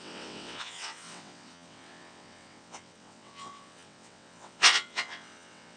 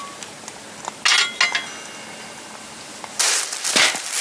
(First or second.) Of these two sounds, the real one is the second